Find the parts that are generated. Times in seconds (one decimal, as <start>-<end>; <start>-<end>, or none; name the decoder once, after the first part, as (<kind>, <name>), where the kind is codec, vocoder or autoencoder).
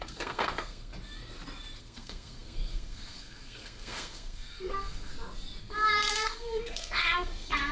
0.0-0.9 (codec, SNAC); 1.8-5.1; 5.6-7.7